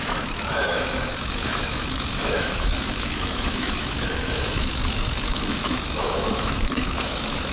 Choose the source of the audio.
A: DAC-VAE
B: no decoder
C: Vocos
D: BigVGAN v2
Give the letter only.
A